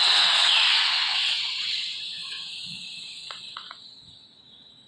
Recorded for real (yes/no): no